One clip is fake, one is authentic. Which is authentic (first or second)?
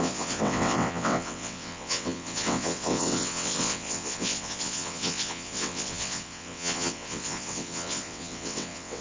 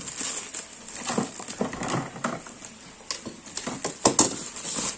second